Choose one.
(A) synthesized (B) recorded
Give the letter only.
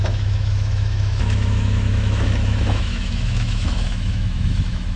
A